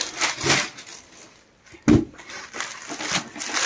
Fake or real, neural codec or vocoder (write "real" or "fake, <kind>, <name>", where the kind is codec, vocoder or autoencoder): real